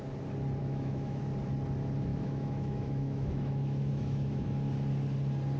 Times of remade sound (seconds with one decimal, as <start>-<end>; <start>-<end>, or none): 0.6-1.2; 2.1-4.5